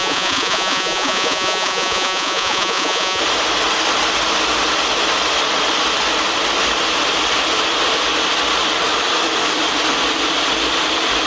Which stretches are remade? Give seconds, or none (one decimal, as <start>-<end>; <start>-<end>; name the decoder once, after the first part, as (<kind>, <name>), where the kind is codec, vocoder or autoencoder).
0.0-3.2 (vocoder, Vocos)